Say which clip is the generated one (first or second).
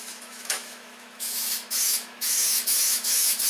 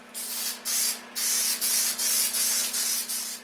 first